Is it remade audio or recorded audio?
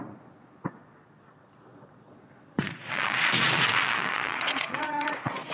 remade